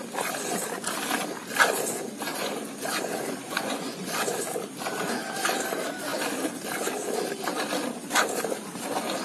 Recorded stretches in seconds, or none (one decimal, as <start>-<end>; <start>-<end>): 0.0-2.3; 4.4-9.2